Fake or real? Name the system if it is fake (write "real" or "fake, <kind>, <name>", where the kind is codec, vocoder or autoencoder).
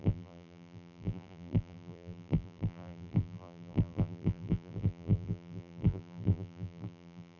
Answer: fake, vocoder, BigVGAN v2